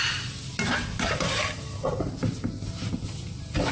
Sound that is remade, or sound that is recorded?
recorded